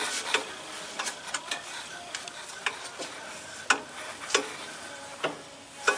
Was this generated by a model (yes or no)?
no